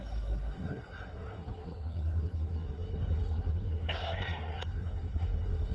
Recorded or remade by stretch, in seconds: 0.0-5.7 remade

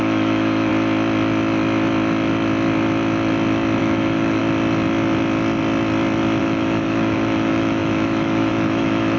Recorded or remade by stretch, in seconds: 0.0-0.7 remade; 0.7-3.8 recorded; 3.8-4.4 remade; 4.4-6.4 recorded; 6.4-9.2 remade

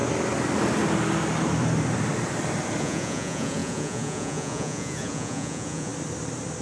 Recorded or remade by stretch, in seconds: 0.0-2.8 recorded; 2.8-5.9 remade; 5.9-6.6 recorded

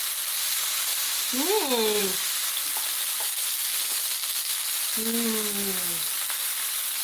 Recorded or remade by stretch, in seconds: 0.0-7.0 recorded